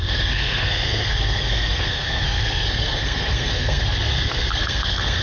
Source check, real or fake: fake